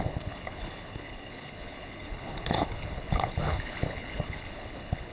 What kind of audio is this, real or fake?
fake